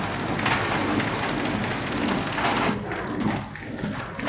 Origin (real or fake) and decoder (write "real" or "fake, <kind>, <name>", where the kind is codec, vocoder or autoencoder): real